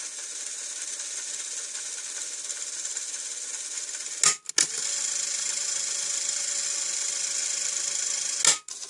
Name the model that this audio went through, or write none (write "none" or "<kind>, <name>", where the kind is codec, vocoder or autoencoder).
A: none